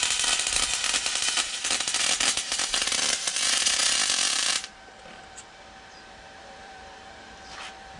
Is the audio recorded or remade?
remade